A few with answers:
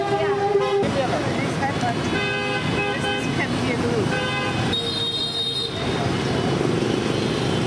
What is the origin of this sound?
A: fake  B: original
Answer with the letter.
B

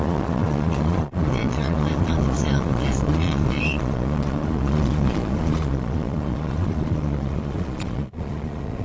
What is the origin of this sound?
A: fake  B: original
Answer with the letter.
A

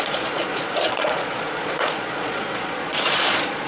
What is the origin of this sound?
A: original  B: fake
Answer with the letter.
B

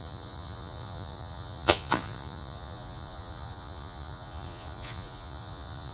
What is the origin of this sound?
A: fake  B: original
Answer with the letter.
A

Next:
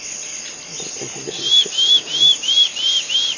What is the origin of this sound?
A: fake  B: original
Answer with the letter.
B